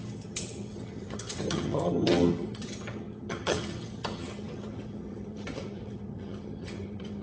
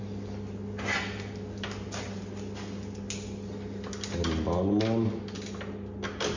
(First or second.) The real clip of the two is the second